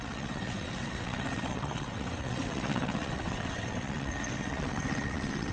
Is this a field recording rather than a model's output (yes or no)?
no